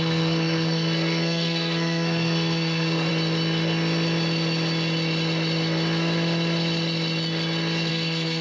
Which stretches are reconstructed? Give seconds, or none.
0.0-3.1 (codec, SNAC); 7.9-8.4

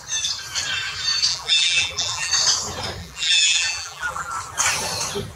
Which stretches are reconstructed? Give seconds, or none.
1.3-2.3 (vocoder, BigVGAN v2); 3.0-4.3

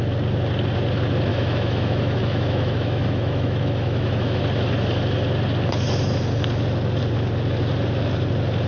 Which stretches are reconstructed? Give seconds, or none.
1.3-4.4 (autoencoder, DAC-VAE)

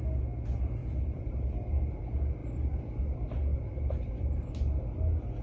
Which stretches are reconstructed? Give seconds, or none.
0.8-1.7 (vocoder, BigVGAN v2); 3.5-4.5

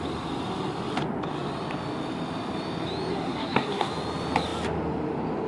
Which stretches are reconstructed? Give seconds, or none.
3.1-3.9 (codec, SNAC)

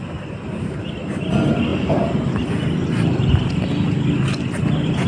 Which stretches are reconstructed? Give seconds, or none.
none